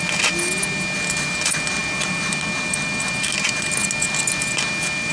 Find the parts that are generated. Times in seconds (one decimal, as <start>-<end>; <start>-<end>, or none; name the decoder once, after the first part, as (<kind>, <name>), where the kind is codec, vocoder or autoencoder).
none